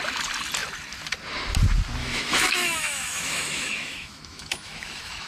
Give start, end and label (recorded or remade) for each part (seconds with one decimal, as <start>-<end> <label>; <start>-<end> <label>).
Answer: 0.0-2.0 recorded; 2.0-5.3 remade

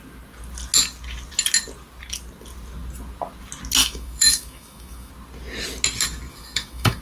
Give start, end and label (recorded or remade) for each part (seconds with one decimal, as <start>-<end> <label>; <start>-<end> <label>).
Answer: 0.0-3.8 recorded; 3.8-5.1 remade; 5.1-6.3 recorded; 6.3-7.0 remade

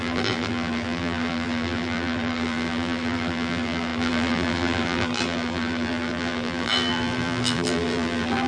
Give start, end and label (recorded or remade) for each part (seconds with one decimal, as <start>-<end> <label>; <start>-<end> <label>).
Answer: 0.0-8.5 remade

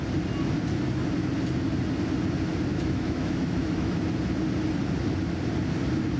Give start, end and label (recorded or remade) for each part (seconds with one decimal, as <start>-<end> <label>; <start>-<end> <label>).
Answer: 0.0-2.7 recorded; 2.7-4.0 remade; 4.0-6.2 recorded

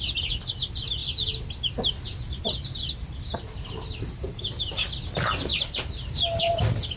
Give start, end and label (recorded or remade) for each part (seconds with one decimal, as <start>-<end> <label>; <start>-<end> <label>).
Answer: 0.0-7.0 recorded